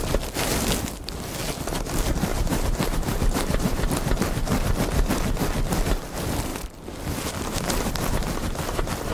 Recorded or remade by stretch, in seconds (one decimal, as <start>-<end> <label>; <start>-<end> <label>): 0.0-2.3 recorded; 2.3-3.9 remade; 3.9-9.1 recorded